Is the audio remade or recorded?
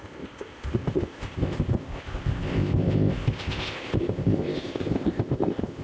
remade